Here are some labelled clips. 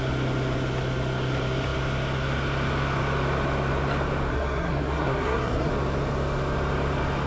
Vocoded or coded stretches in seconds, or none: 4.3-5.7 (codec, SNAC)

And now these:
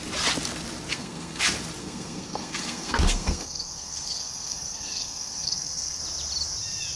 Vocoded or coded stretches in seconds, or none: 0.9-1.4 (codec, SNAC); 1.8-6.0

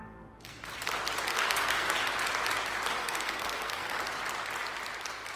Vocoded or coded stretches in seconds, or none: 0.0-0.6 (codec, SNAC); 1.3-1.9; 3.0-4.0

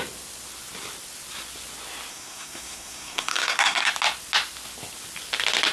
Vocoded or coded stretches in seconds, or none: 2.1-3.9 (codec, SNAC)

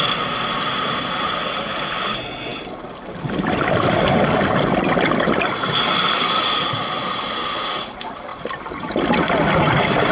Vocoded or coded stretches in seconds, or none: none

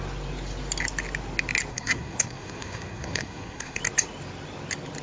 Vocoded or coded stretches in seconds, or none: 1.7-3.8 (codec, SNAC)